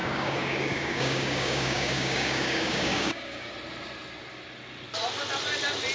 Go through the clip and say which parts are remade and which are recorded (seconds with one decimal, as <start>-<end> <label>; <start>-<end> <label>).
0.0-3.5 remade; 3.5-5.9 recorded